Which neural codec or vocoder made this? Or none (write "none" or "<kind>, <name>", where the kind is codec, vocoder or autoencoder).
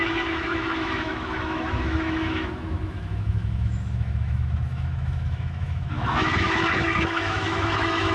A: autoencoder, DAC-VAE